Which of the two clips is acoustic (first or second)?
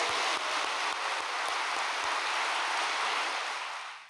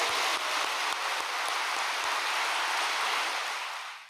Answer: first